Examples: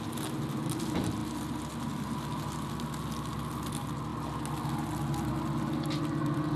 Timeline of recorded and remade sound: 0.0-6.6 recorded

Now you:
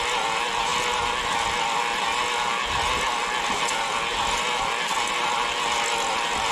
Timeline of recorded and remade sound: 0.0-6.5 recorded

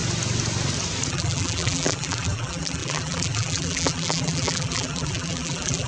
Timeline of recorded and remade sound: 0.0-1.1 recorded; 1.1-5.9 remade

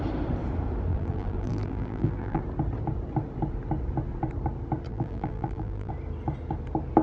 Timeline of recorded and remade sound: 0.0-0.9 recorded; 0.9-2.4 remade; 2.4-4.9 recorded; 4.9-5.9 remade; 5.9-7.0 recorded

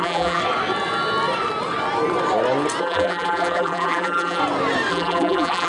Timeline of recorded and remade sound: 0.0-0.4 remade; 0.4-2.8 recorded; 2.8-4.4 remade; 4.4-4.9 recorded; 4.9-5.7 remade

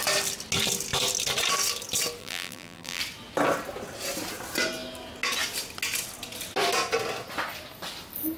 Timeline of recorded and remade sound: 0.0-2.2 recorded; 2.2-3.0 remade; 3.0-8.4 recorded